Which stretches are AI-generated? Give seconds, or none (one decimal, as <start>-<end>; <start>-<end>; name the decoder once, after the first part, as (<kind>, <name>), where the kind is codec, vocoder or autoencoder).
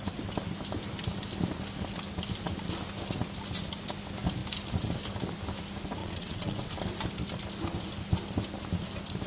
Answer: 6.0-6.7 (vocoder, WaveNeXt)